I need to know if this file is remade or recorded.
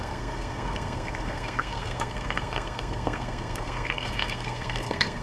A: remade